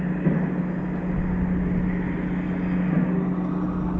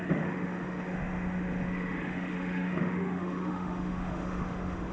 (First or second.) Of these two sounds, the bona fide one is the first